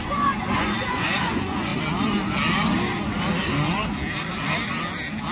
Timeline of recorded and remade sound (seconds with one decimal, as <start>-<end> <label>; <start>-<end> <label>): 0.0-1.7 remade; 1.7-5.3 recorded